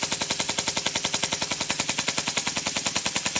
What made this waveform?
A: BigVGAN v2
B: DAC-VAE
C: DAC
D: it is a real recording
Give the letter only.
D